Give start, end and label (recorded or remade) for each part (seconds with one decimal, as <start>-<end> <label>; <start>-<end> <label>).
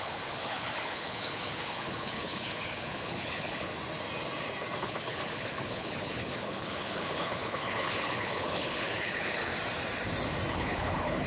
0.0-3.7 remade; 3.7-4.8 recorded; 4.8-9.5 remade; 9.5-10.5 recorded; 10.5-11.3 remade